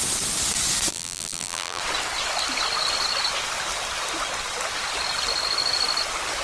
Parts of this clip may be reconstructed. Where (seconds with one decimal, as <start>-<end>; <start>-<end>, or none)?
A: 0.9-1.8